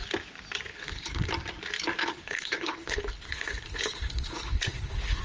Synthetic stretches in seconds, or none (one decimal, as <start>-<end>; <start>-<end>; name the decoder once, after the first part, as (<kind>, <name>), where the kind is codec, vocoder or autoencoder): 0.7-1.3 (codec, HILCodec); 2.0-5.2